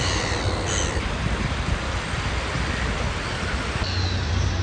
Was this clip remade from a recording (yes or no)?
no